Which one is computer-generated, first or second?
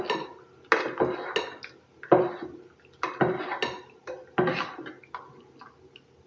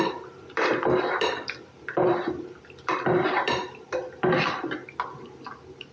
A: second